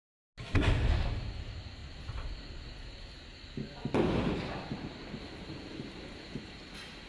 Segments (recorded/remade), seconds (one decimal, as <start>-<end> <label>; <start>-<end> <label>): 0.0-7.1 recorded